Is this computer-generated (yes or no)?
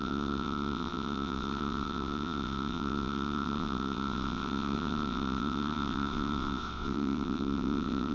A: yes